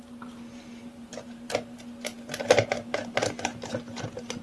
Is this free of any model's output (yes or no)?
yes